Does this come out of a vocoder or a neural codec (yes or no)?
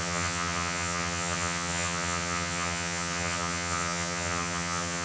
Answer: yes